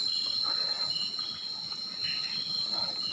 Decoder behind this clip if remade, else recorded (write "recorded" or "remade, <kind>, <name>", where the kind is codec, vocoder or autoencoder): recorded